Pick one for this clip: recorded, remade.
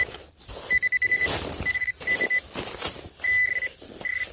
recorded